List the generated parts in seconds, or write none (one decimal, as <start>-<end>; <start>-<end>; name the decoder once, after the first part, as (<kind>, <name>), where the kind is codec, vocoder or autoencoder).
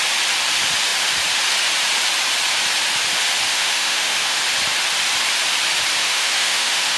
3.5-4.4 (autoencoder, DAC-VAE); 6.0-7.0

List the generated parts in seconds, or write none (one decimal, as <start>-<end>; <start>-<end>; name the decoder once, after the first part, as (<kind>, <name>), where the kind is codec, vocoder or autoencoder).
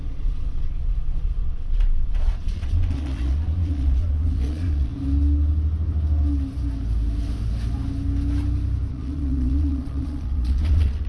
0.0-4.9 (vocoder, Vocos); 8.9-11.1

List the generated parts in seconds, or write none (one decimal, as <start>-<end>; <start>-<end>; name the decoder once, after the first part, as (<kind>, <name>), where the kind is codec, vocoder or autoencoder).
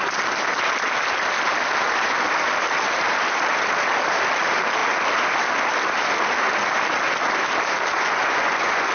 7.9-8.9 (vocoder, Vocos)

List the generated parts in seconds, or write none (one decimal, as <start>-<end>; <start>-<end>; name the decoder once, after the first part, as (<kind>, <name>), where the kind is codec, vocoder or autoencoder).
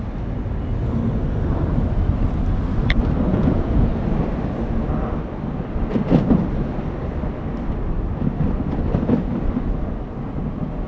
3.3-3.9 (vocoder, Vocos)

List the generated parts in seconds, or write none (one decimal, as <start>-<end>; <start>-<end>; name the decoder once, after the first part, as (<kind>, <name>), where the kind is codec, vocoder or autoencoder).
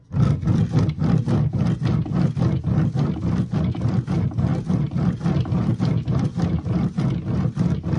none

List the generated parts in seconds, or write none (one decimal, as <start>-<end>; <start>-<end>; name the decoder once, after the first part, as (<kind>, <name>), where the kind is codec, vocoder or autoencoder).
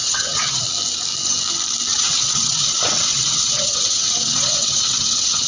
0.0-0.6 (vocoder, WaveNeXt); 1.9-5.5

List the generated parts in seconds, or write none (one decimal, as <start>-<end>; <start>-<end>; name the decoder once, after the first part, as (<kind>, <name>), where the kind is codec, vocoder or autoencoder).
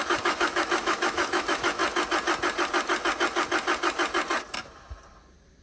0.0-1.8 (autoencoder, DAC-VAE)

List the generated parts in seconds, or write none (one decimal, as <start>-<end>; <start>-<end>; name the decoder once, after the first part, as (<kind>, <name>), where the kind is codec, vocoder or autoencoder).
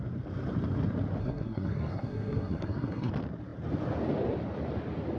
1.2-3.1 (codec, SNAC)